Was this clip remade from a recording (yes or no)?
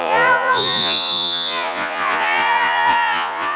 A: yes